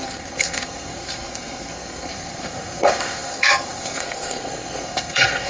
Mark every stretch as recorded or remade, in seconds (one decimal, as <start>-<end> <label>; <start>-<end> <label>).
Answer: 0.0-5.5 remade